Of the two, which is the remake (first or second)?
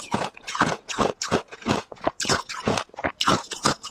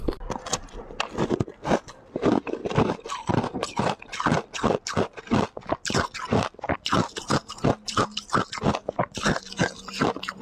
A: first